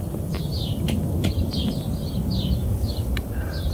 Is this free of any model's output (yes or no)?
yes